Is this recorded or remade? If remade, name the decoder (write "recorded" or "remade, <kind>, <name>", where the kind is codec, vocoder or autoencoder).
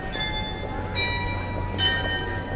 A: recorded